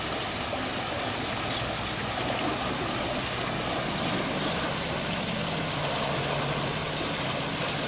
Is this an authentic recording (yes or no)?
yes